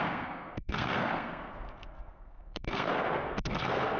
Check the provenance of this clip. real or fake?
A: fake